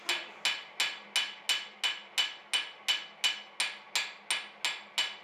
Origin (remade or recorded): recorded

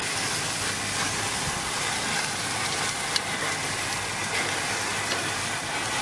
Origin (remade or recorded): recorded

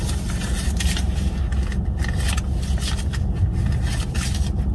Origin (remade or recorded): recorded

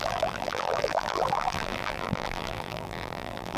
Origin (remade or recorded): remade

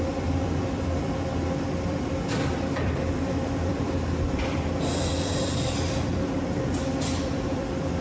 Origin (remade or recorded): remade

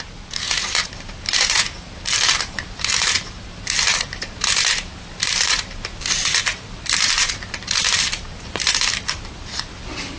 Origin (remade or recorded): remade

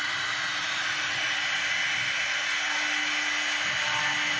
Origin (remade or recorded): recorded